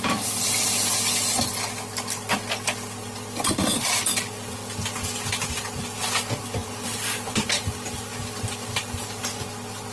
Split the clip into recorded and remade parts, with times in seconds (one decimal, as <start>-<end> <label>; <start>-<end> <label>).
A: 0.0-6.6 recorded; 6.6-7.5 remade; 7.5-9.9 recorded